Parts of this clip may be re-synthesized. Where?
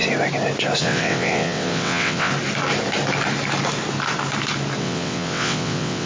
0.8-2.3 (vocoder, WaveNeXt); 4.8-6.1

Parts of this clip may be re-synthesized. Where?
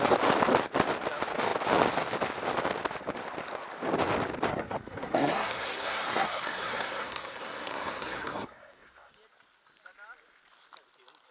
4.5-9.1 (codec, SNAC)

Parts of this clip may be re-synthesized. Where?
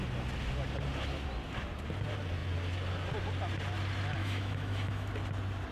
4.2-5.1 (autoencoder, DAC-VAE)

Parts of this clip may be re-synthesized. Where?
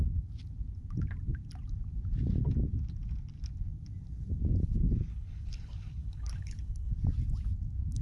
5.1-6.9 (codec, HILCodec)